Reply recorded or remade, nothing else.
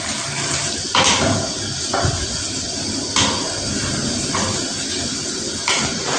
recorded